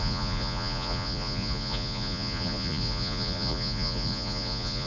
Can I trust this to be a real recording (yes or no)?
no